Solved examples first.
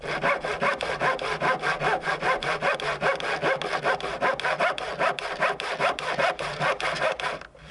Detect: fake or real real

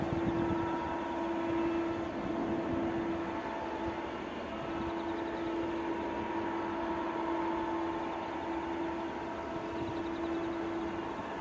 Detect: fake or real real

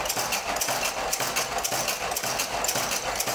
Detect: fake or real real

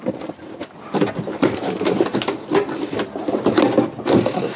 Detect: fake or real real